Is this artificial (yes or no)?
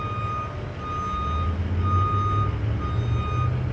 no